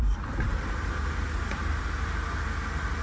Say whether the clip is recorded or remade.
recorded